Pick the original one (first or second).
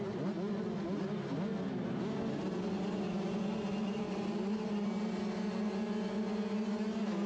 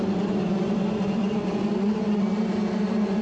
first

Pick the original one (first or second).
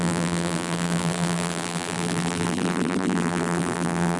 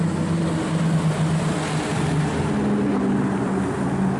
second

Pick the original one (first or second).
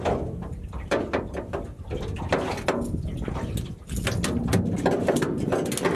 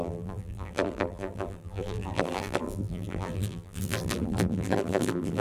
first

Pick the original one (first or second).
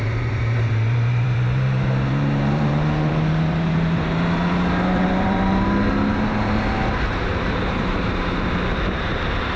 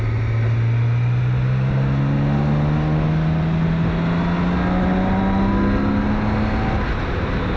second